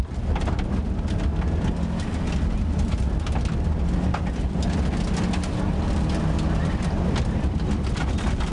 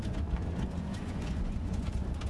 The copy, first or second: second